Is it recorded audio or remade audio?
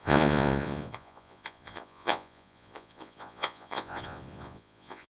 remade